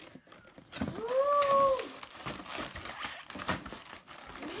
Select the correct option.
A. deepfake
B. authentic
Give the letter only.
B